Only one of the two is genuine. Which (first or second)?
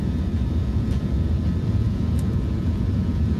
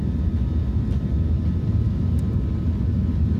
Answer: second